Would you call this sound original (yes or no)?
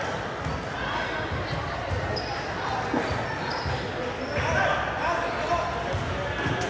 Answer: yes